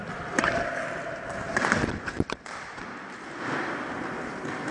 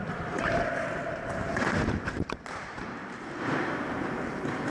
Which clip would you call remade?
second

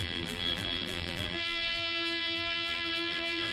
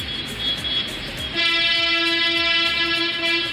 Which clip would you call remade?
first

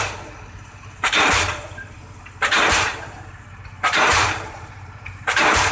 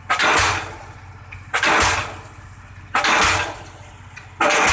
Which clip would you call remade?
first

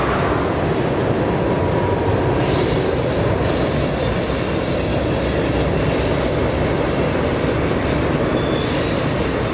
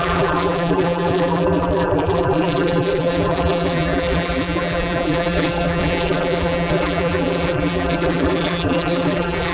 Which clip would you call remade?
second